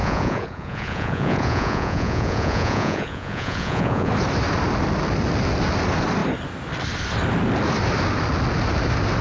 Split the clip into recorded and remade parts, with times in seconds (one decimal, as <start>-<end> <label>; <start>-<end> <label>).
0.0-4.1 remade; 4.1-9.2 recorded